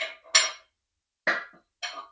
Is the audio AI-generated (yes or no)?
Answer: no